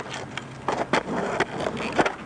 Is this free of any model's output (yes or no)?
yes